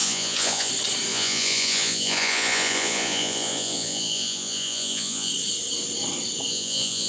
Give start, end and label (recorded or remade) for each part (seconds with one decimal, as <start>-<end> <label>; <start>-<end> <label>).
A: 0.0-0.7 remade; 0.7-1.1 recorded; 1.1-5.3 remade; 5.3-6.5 recorded; 6.5-7.1 remade